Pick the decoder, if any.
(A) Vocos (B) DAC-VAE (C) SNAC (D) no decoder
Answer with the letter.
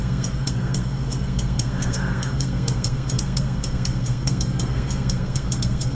C